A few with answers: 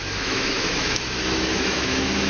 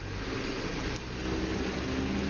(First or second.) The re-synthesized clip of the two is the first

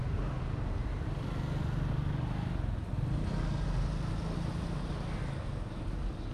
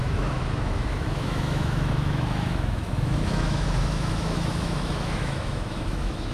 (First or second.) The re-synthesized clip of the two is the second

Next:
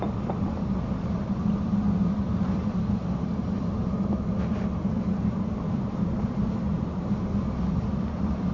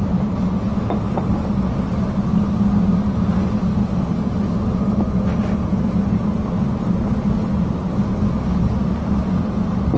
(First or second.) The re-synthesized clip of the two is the first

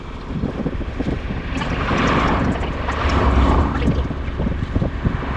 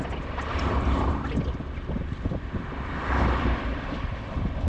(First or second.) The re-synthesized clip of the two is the second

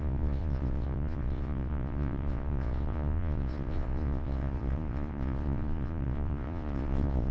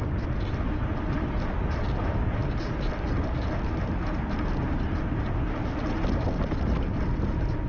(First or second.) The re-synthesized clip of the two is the first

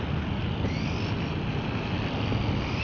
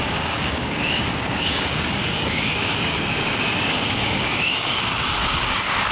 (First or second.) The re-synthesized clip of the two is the second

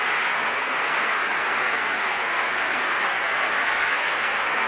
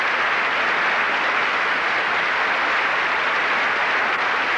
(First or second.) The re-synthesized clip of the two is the first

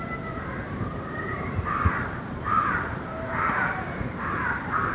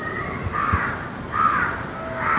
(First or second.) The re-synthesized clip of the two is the first